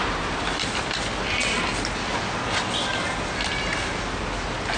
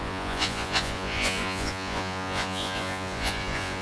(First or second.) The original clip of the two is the first